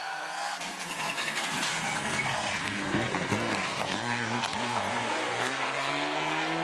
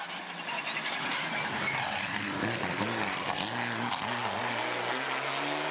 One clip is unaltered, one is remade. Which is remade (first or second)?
first